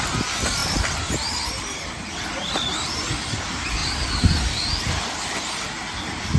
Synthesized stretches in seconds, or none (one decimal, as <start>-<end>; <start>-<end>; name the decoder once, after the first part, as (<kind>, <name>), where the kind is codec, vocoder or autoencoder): 3.8-4.9 (vocoder, BigVGAN v2)